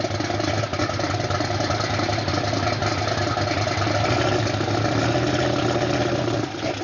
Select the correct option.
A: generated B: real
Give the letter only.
B